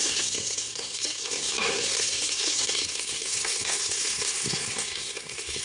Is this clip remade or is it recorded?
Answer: remade